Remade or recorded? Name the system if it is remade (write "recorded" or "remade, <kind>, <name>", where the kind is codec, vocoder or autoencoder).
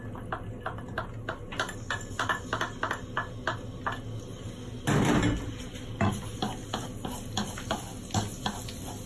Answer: recorded